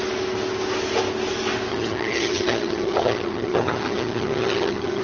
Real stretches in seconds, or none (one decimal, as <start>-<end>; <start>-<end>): 0.0-1.7